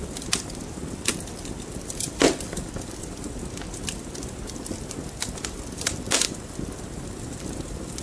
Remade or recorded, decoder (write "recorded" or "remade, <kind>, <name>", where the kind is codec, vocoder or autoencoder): recorded